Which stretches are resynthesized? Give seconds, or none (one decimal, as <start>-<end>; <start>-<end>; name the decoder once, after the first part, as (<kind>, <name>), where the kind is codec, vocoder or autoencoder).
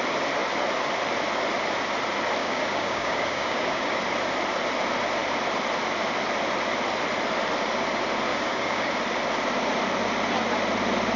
2.4-4.0 (codec, DAC); 8.3-8.9